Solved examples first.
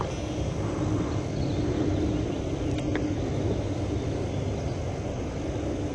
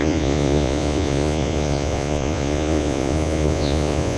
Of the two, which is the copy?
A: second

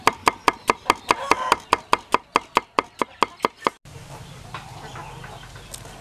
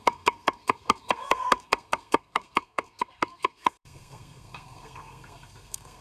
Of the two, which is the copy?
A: second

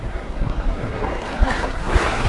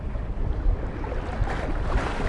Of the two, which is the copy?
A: first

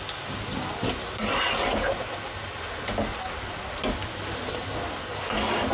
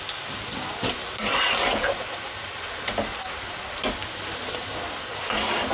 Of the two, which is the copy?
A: second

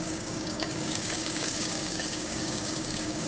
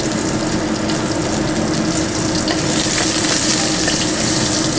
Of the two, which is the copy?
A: first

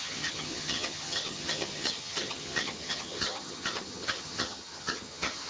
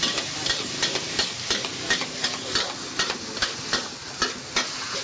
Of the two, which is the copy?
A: first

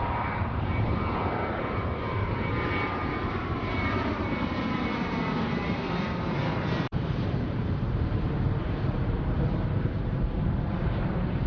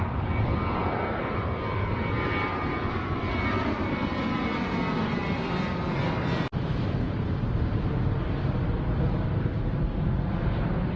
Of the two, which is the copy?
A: first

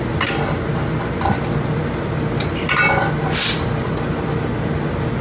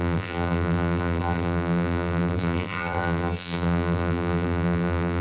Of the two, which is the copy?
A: second